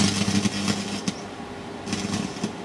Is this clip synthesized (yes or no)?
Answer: no